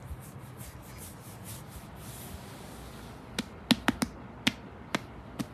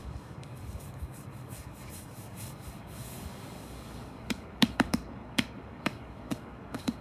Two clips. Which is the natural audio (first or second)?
first